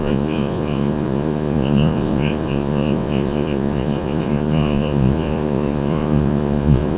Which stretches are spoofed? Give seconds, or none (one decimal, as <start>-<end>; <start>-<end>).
0.0-7.0